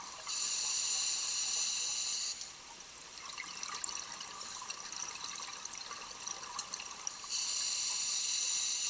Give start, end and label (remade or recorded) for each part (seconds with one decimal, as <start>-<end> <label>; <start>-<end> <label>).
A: 0.0-8.9 recorded

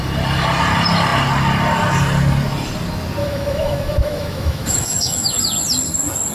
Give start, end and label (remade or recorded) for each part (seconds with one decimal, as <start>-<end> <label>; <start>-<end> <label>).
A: 0.0-3.2 recorded; 3.2-5.4 remade; 5.4-6.3 recorded

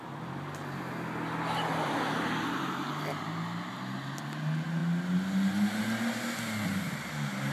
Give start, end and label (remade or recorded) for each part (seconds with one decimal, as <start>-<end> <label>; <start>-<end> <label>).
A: 0.0-7.5 recorded

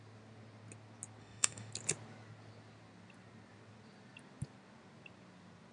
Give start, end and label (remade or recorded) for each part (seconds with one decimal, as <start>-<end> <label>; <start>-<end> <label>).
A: 0.0-1.2 recorded; 1.2-1.7 remade; 1.7-5.7 recorded

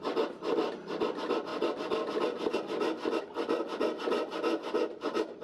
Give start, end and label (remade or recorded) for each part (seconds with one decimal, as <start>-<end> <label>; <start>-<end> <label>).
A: 0.0-5.4 recorded